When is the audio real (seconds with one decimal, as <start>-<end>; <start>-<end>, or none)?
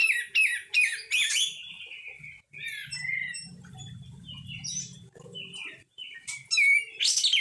1.8-2.8; 7.0-7.4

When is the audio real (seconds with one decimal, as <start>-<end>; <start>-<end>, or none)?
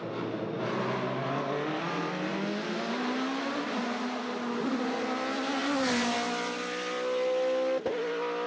0.0-8.5